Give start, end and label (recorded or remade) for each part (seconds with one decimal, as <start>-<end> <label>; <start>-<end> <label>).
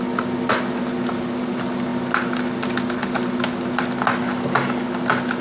0.0-5.4 recorded